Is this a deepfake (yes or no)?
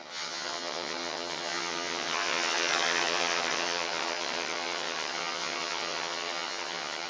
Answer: yes